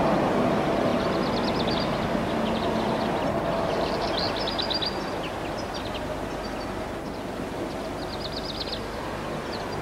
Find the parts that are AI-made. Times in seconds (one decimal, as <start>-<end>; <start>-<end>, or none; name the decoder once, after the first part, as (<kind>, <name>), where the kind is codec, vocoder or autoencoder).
none